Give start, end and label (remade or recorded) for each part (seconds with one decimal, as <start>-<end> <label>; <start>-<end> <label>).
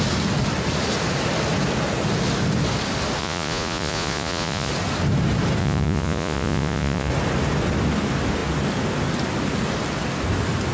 0.0-3.2 recorded; 3.2-4.7 remade; 4.7-5.6 recorded; 5.6-7.1 remade; 7.1-10.7 recorded